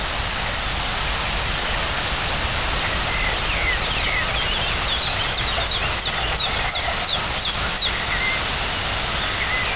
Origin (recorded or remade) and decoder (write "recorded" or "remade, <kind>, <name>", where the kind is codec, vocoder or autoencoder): recorded